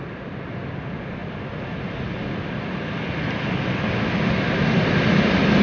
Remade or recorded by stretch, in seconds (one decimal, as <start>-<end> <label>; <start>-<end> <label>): 0.0-5.6 recorded